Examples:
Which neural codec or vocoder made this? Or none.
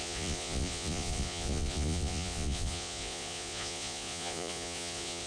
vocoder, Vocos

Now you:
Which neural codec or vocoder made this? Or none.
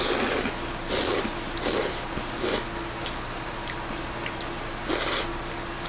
none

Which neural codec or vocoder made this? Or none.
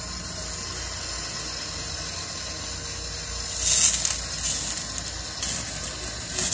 none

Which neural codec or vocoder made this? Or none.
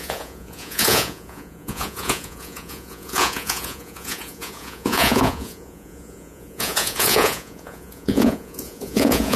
vocoder, Vocos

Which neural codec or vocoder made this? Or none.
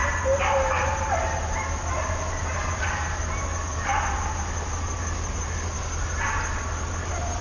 none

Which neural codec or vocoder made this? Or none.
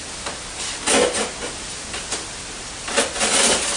none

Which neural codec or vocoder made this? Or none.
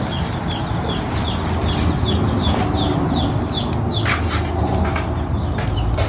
none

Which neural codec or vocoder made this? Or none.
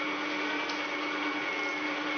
none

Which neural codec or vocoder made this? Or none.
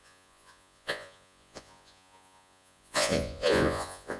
vocoder, Vocos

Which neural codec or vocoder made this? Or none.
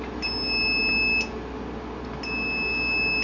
none